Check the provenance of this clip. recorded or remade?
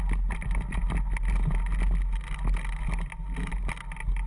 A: recorded